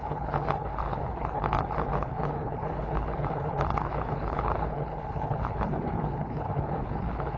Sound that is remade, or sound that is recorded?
remade